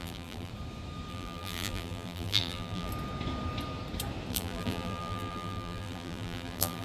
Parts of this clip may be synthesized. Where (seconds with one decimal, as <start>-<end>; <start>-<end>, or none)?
0.0-0.5; 1.1-2.9; 4.3-6.8